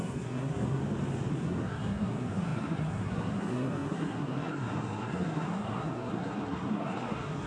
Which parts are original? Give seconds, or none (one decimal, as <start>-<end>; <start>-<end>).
0.8-1.3